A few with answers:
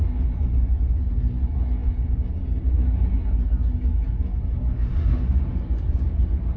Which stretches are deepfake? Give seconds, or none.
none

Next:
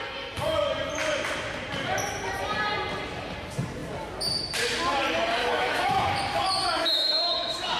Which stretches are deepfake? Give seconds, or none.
5.4-6.1; 6.6-7.8

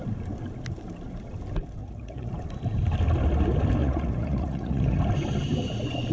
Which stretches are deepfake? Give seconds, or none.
1.8-2.3; 3.8-5.0